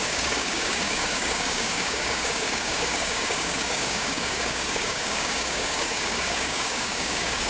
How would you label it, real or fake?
fake